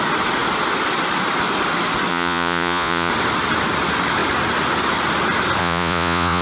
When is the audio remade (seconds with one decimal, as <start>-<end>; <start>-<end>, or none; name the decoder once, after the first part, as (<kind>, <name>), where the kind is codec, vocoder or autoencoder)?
2.1-3.1 (vocoder, Vocos); 5.6-6.4